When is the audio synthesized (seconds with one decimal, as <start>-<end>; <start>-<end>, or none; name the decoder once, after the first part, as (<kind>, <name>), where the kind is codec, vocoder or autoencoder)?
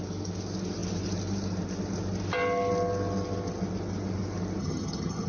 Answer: 4.6-5.3 (vocoder, HiFi-GAN)